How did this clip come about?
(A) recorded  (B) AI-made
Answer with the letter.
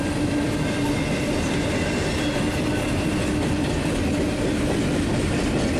A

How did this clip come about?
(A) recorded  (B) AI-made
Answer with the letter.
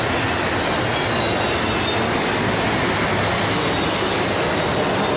A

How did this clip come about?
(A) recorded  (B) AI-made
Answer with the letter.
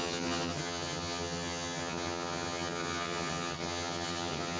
B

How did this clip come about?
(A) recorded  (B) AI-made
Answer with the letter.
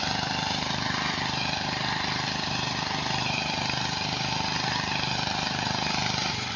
A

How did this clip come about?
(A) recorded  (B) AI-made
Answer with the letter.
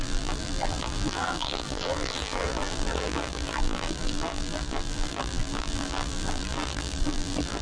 B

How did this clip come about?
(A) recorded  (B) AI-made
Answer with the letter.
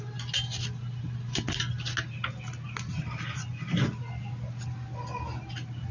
A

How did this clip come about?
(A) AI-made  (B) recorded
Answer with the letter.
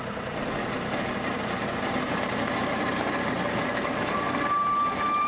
B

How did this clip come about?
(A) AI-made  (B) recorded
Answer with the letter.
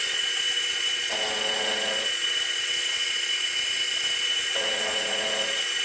A